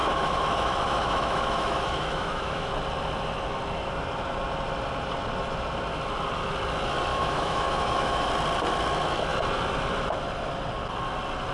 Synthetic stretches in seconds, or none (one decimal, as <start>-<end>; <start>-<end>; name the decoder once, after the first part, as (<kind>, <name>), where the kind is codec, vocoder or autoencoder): 0.0-2.7 (autoencoder, DAC-VAE); 7.1-8.3

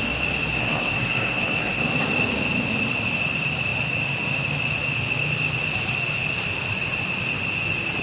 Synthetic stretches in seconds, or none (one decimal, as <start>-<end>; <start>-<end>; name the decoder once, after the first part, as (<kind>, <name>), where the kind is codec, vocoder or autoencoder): 0.6-1.8 (codec, SNAC)

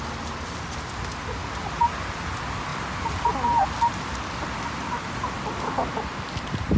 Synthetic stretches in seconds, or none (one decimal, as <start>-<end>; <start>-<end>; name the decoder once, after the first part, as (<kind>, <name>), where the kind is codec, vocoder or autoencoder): none

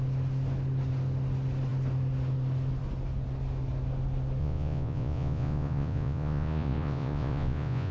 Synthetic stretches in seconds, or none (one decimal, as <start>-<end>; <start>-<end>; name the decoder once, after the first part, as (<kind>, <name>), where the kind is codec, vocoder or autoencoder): 4.4-7.9 (vocoder, Vocos)